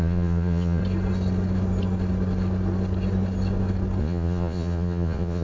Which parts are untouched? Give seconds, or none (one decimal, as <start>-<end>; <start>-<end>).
0.8-4.0